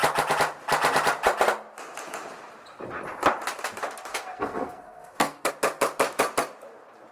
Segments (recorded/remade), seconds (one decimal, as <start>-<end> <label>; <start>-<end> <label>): 0.0-4.1 recorded; 4.1-5.5 remade; 5.5-7.1 recorded